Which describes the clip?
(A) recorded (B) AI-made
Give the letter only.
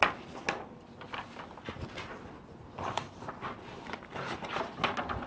A